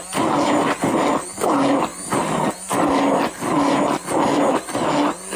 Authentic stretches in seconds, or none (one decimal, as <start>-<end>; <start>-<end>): 0.0-5.4